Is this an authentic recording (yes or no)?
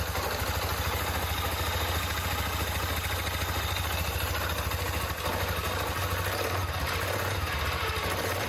yes